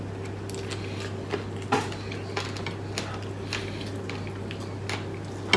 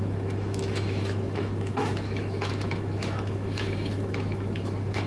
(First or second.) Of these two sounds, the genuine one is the first